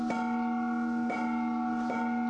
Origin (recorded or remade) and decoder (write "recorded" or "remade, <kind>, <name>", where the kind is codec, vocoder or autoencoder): recorded